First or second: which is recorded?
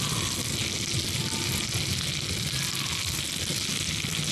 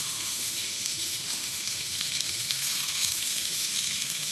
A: first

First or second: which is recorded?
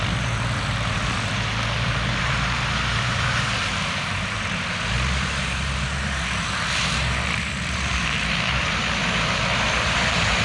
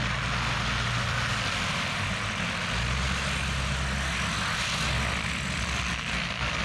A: second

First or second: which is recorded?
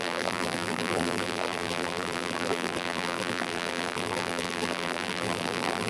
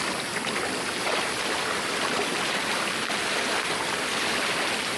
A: second